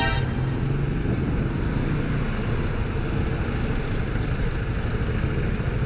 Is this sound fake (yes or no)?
no